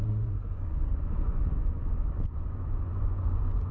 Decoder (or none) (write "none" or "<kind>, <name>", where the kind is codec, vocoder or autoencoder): vocoder, Vocos